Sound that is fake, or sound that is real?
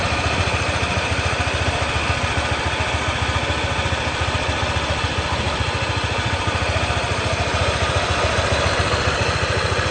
real